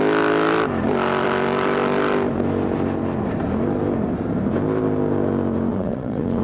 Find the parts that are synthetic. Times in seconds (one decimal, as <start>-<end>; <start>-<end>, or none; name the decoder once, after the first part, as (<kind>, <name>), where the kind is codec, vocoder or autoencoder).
5.7-6.4 (vocoder, Vocos)